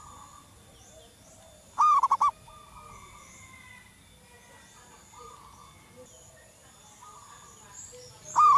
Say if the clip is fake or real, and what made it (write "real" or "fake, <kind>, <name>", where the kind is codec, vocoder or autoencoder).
real